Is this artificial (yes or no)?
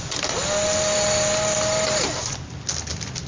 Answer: no